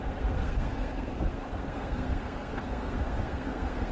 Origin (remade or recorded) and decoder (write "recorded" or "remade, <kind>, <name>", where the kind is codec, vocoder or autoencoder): remade, codec, SNAC